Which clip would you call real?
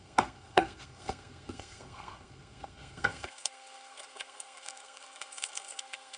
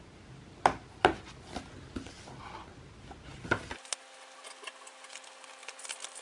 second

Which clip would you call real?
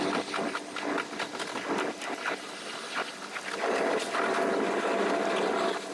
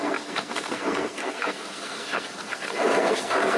first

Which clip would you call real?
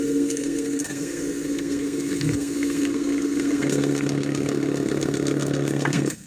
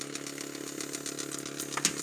second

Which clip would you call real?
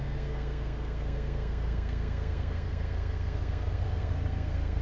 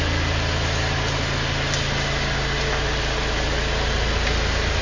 second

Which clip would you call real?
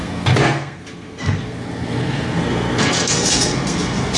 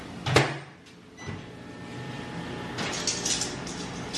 second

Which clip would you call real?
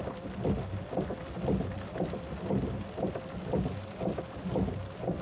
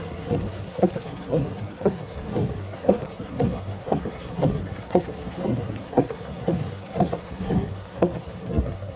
first